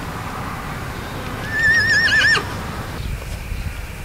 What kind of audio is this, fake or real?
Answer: real